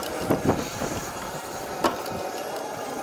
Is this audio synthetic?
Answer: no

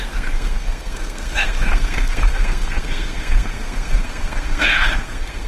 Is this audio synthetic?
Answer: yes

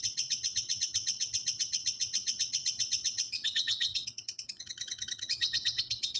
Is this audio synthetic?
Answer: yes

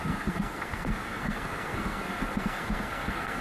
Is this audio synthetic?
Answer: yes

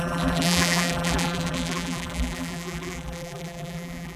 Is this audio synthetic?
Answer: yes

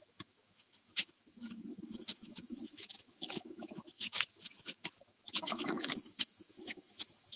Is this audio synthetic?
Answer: yes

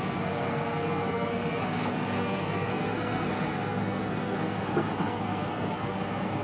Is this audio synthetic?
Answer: yes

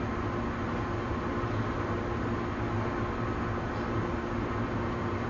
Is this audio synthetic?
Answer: no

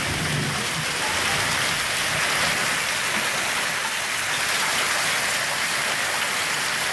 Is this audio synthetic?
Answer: no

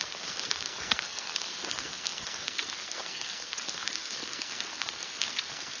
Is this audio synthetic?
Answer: yes